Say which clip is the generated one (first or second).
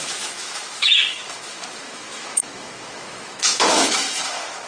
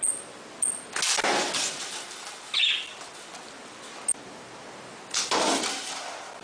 first